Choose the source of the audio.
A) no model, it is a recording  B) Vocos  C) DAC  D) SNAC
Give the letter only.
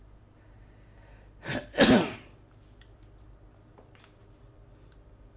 A